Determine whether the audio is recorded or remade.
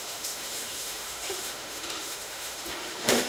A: remade